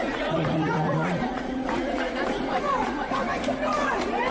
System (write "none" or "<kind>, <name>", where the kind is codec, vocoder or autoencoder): vocoder, Vocos